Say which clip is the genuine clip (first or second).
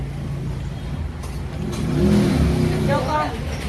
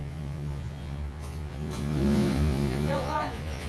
first